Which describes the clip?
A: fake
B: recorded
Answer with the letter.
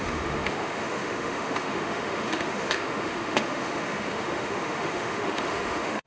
A